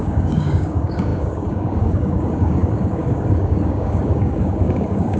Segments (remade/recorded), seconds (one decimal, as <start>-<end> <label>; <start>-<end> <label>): 0.0-5.2 remade